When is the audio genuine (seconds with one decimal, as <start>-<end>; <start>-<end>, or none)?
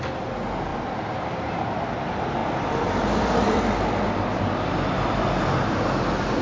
0.0-6.4